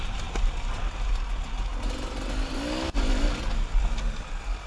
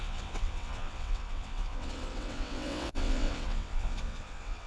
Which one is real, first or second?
first